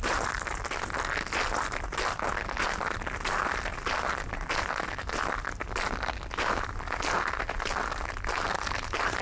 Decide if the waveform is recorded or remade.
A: recorded